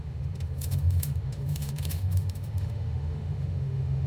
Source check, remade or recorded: remade